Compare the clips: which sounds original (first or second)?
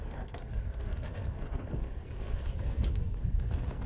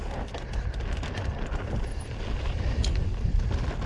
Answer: second